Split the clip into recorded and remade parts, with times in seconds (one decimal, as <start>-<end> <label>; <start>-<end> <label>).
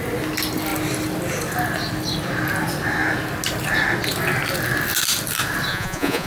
0.0-5.7 recorded; 5.7-6.3 remade